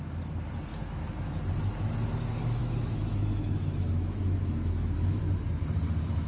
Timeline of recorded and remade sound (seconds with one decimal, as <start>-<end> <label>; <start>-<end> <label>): 0.0-0.7 recorded; 0.7-1.4 remade; 1.4-2.6 recorded; 2.6-5.2 remade; 5.2-6.3 recorded